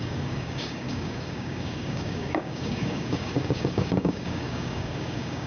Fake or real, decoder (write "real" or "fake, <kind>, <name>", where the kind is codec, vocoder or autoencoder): fake, codec, DAC